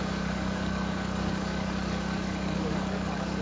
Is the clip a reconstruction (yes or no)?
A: yes